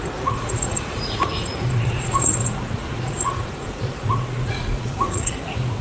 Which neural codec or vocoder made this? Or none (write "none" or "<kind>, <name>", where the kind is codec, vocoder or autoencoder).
vocoder, Vocos